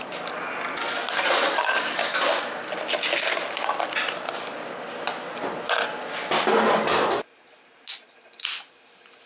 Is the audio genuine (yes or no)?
yes